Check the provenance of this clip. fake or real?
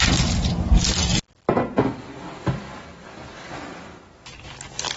real